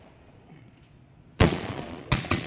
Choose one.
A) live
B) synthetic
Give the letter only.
B